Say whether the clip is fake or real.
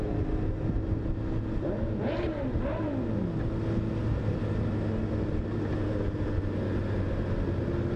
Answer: real